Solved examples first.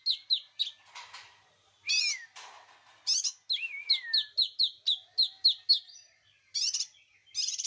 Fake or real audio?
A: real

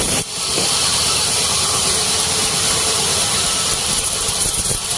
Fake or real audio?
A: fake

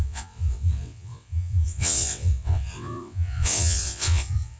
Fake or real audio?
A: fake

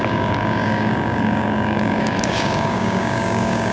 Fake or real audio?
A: fake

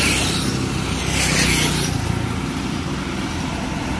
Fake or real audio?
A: real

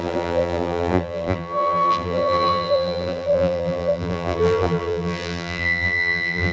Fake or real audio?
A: fake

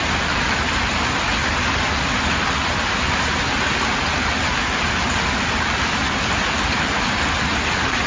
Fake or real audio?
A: real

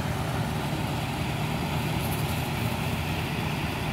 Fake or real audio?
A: real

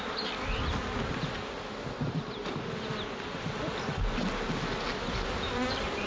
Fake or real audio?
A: real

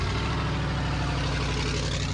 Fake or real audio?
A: real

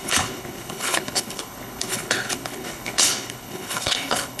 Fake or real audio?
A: fake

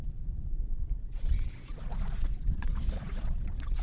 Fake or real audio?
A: fake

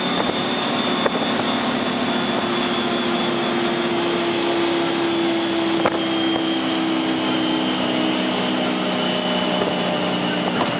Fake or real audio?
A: real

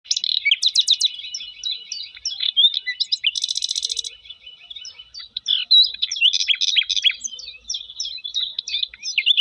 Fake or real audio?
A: real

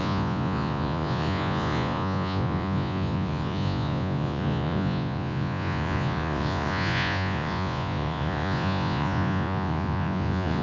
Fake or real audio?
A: fake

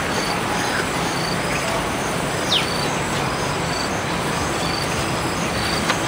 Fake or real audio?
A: real